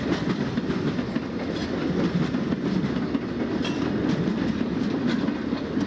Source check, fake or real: real